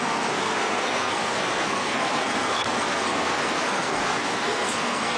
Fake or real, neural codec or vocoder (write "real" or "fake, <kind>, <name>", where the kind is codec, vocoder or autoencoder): fake, codec, SNAC